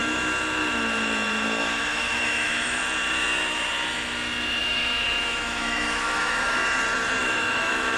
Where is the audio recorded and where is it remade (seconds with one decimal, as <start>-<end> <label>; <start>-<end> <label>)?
0.0-1.8 recorded; 1.8-2.8 remade; 2.8-4.6 recorded; 4.6-6.6 remade; 6.6-7.2 recorded; 7.2-8.0 remade